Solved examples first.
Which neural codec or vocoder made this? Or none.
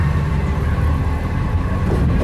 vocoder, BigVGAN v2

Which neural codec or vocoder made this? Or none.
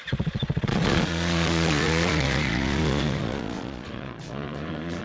vocoder, Vocos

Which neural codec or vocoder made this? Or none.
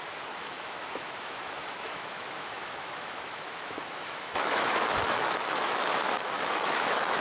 autoencoder, DAC-VAE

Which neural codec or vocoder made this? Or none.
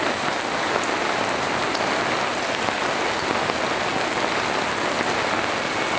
none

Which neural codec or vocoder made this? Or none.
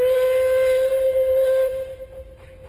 none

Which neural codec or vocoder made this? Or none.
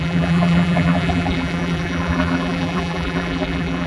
vocoder, BigVGAN v2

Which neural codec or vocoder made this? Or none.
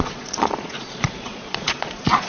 vocoder, Vocos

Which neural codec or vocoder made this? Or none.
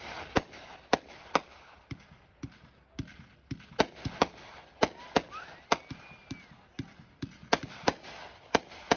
none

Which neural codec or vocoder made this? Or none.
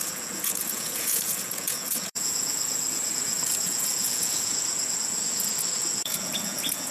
vocoder, Vocos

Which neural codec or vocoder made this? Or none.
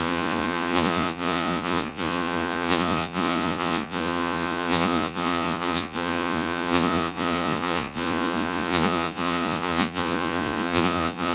vocoder, Vocos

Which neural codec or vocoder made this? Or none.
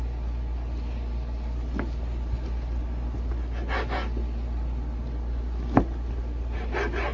none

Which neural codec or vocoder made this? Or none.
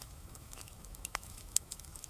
autoencoder, DAC-VAE